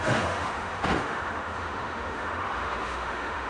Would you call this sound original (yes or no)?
no